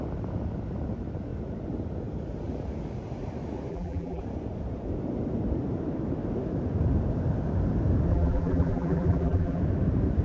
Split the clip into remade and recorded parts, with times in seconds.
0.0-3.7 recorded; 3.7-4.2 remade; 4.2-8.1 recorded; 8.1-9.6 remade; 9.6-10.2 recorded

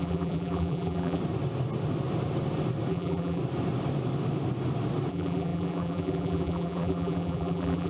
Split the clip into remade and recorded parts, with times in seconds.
0.0-1.2 remade; 1.2-2.9 recorded; 2.9-3.4 remade; 3.4-5.1 recorded; 5.1-7.9 remade